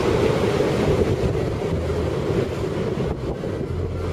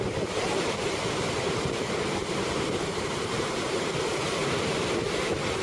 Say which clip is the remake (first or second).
second